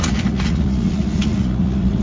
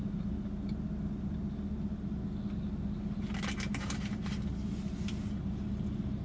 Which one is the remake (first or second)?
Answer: first